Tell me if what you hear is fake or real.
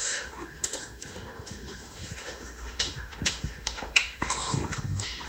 fake